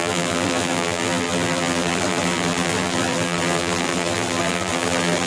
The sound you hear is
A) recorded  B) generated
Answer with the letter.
B